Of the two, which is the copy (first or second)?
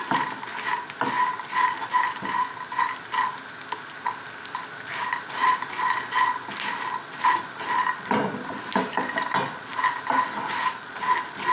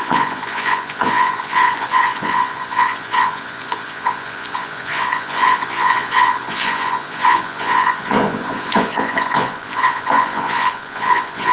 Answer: second